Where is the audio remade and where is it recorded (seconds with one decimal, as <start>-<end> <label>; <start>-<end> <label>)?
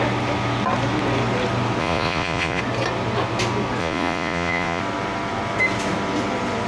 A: 0.0-1.8 recorded; 1.8-2.6 remade; 2.6-3.8 recorded; 3.8-4.8 remade; 4.8-6.7 recorded